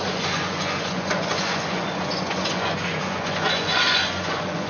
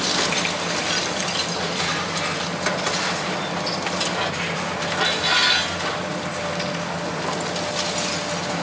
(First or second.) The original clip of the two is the second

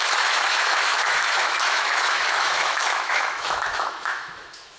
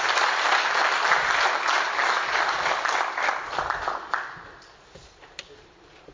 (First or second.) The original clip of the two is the second